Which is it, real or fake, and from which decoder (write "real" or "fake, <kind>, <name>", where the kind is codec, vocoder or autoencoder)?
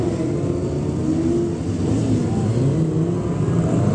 real